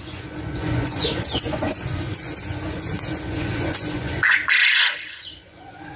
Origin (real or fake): fake